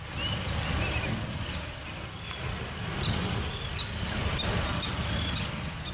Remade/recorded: recorded